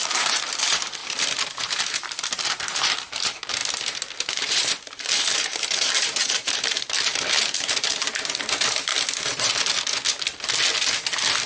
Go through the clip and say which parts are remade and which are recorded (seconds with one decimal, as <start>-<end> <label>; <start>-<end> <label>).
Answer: 0.0-3.6 remade; 3.6-4.3 recorded; 4.3-8.9 remade; 8.9-11.5 recorded